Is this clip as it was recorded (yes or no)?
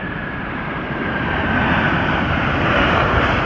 no